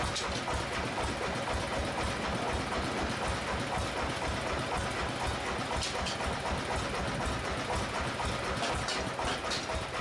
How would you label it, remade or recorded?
recorded